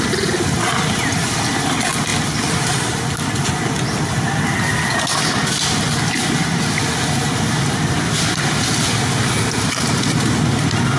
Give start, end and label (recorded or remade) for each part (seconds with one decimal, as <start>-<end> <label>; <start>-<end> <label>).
0.0-11.0 recorded